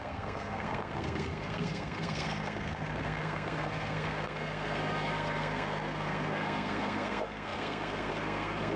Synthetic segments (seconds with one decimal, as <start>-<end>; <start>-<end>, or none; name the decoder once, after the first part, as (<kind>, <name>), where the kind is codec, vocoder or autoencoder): 0.0-8.8 (codec, SNAC)